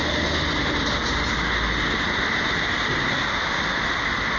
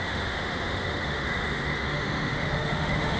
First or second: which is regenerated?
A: second